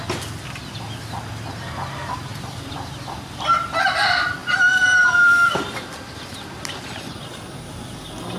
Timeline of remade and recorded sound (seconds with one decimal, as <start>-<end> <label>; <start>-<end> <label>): 0.0-2.3 recorded; 2.3-2.9 remade; 2.9-4.4 recorded; 4.4-6.8 remade; 6.8-8.4 recorded